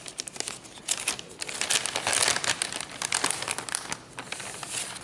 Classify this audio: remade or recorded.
recorded